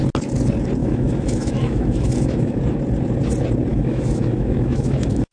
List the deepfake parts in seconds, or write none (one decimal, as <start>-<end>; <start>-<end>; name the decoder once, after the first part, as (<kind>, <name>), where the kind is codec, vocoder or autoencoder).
0.8-2.6 (autoencoder, DAC-VAE); 3.7-5.3